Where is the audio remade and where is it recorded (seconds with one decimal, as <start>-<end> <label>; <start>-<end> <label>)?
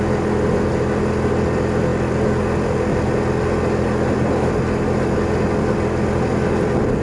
0.0-7.0 recorded